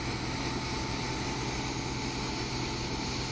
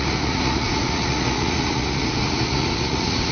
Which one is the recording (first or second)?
first